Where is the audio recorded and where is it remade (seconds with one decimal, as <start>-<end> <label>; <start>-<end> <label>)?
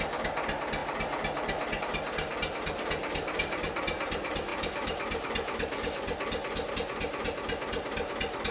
0.0-8.5 recorded